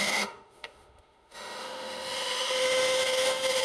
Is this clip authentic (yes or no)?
no